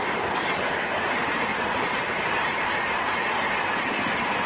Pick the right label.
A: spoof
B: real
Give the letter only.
A